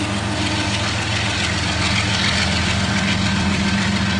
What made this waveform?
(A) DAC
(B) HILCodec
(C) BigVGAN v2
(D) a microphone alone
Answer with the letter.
D